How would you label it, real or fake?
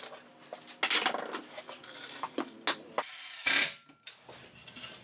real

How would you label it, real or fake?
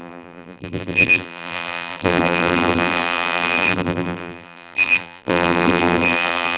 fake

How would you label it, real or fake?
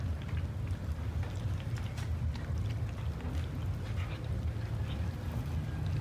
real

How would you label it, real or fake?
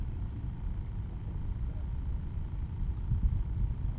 real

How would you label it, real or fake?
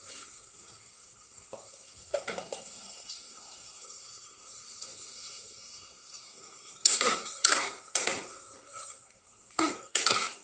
fake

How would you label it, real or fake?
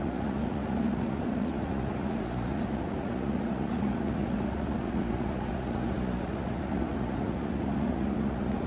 fake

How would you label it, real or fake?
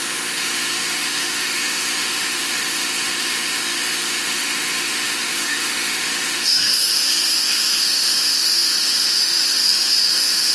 fake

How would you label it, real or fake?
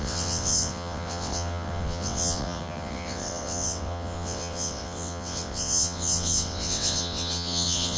fake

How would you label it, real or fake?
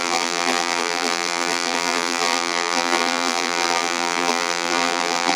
fake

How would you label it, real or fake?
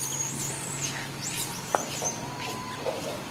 real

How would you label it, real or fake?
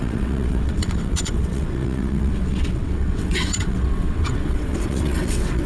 fake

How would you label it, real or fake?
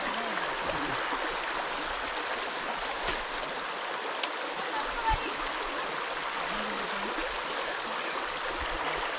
real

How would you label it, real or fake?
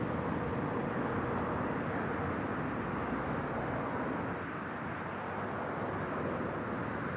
real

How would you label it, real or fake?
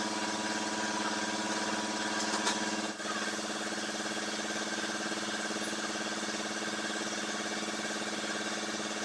real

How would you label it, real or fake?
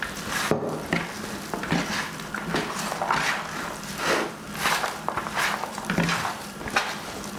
real